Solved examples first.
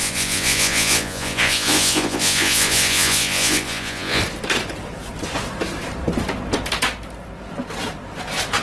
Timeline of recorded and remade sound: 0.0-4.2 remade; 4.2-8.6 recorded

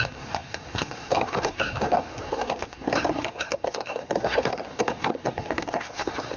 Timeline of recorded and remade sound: 0.0-6.4 remade

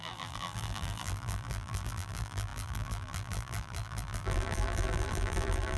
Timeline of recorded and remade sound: 0.0-5.8 remade